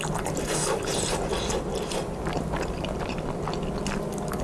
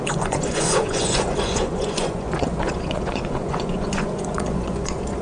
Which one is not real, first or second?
second